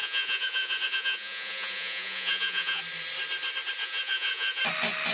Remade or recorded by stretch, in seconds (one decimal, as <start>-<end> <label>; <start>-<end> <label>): 0.0-2.8 remade; 2.8-3.8 recorded; 3.8-4.6 remade; 4.6-5.1 recorded